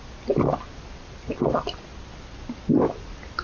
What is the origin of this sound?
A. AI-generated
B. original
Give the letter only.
B